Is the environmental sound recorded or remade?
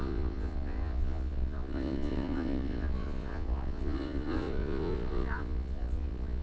remade